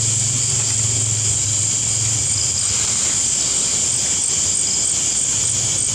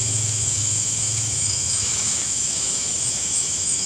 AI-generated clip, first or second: second